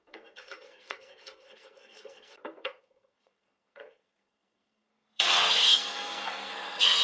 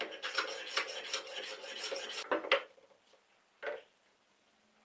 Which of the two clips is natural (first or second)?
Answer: second